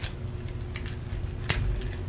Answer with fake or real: real